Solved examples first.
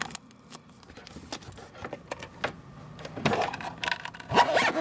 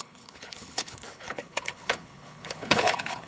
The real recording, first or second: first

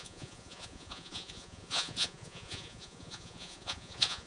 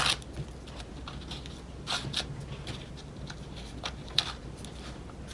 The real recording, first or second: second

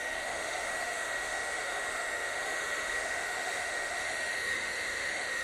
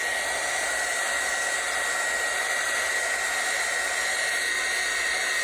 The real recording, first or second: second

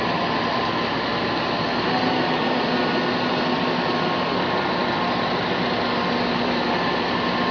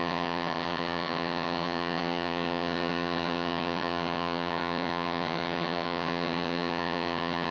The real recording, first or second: first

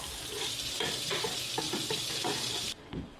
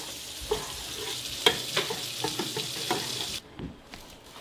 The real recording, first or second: second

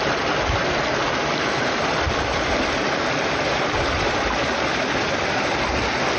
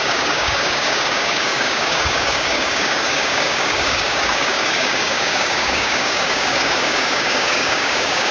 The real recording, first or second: first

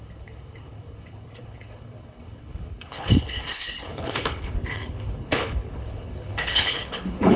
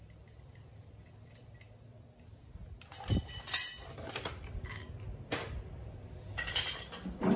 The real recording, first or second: second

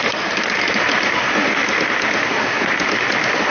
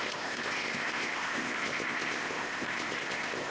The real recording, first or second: first